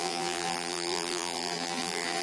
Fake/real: fake